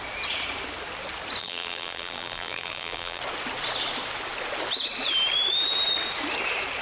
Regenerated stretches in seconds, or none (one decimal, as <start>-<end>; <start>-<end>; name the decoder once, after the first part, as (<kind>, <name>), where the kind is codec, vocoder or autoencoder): 1.4-3.2 (vocoder, BigVGAN v2)